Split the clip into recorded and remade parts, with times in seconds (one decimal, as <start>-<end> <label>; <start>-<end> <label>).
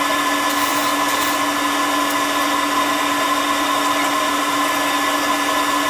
0.0-5.9 recorded